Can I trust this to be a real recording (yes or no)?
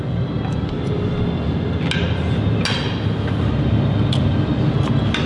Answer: yes